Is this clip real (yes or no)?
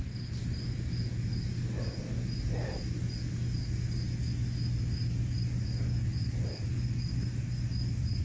yes